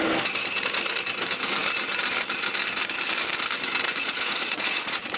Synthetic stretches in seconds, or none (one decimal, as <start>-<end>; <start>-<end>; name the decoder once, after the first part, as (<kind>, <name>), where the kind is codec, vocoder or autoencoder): 3.9-5.2 (vocoder, Vocos)